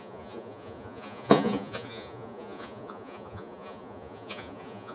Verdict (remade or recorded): remade